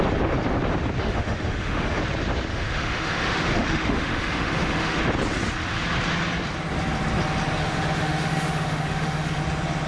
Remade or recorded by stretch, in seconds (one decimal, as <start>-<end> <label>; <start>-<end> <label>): 0.0-1.0 recorded; 1.0-2.0 remade; 2.0-2.5 recorded; 2.5-5.0 remade; 5.0-7.6 recorded; 7.6-9.4 remade; 9.4-9.9 recorded